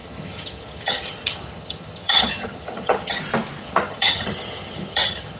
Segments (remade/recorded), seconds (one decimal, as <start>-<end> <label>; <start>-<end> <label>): 0.0-3.2 remade; 3.2-3.6 recorded; 3.6-5.4 remade